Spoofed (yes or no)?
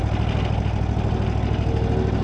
no